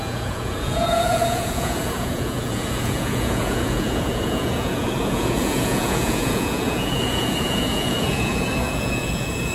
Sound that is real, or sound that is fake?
fake